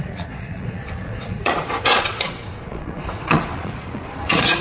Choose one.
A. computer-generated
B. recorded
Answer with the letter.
A